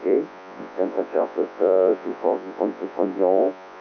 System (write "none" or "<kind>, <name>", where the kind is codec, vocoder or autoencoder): vocoder, Vocos